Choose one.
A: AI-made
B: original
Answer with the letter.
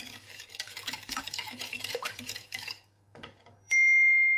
A